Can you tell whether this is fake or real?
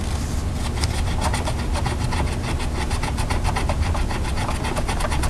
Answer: real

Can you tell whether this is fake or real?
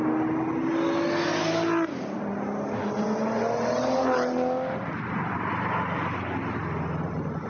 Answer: real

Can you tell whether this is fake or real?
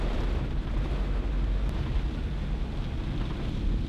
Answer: real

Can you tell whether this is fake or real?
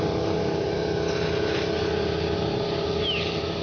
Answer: real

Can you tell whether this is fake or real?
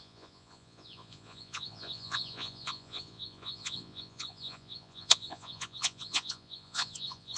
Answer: fake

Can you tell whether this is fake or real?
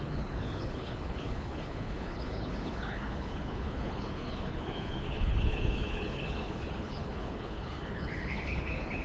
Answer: fake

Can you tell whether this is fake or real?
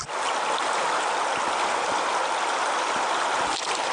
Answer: real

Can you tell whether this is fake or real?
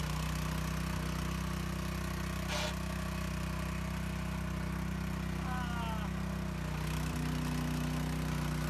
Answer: real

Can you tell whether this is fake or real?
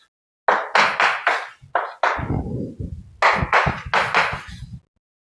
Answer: real